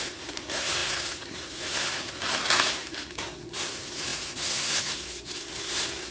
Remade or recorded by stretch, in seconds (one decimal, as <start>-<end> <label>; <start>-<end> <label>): 0.0-6.1 remade